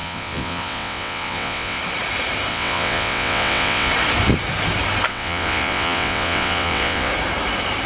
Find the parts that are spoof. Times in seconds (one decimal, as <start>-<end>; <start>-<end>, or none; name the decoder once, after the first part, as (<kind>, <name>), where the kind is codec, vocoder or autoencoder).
0.0-1.8 (vocoder, WaveNeXt); 2.5-3.9; 5.1-7.1